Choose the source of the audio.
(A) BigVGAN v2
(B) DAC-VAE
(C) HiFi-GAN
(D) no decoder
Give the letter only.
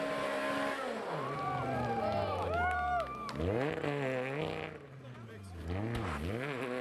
D